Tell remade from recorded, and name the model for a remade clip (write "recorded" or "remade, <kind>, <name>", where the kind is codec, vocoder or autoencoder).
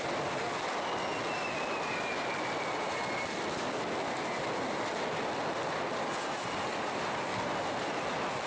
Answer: recorded